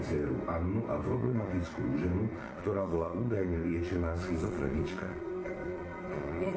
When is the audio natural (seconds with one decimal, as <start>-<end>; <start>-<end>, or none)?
0.0-1.2; 1.8-2.3